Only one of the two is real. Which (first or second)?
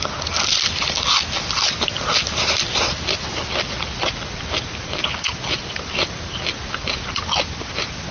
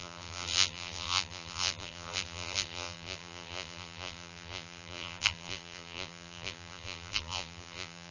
first